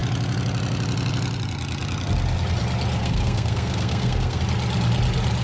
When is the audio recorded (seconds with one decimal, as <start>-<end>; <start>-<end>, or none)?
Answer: 0.0-3.0; 4.4-5.4